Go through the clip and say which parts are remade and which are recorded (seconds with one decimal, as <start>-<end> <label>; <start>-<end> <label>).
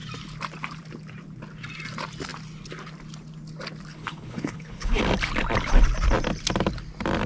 0.0-3.9 recorded; 3.9-5.0 remade; 5.0-7.3 recorded